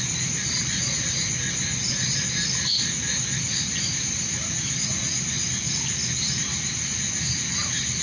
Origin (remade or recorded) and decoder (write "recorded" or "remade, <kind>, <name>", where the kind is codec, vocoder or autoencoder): recorded